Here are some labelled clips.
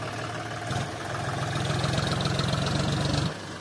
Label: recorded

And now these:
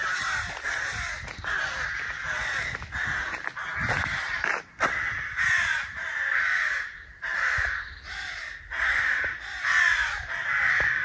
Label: recorded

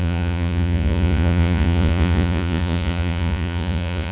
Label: remade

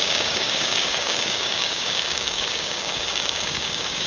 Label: remade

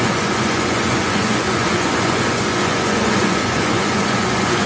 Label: remade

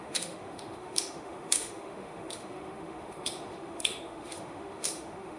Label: remade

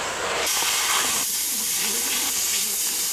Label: recorded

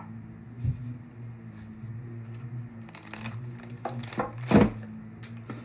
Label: recorded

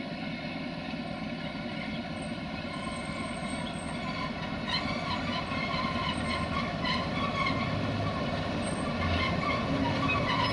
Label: recorded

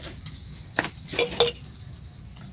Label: recorded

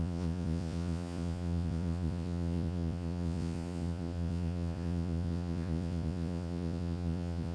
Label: remade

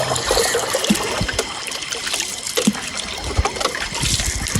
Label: recorded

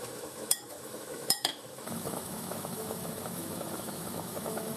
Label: remade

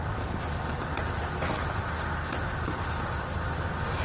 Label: recorded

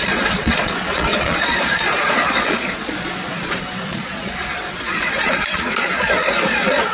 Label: remade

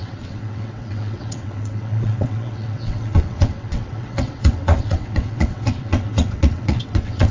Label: remade